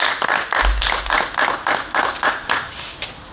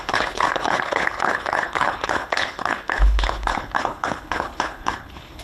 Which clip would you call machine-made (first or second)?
second